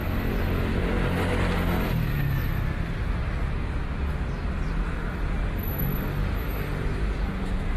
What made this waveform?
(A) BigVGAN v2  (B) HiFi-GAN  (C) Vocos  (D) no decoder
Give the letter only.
D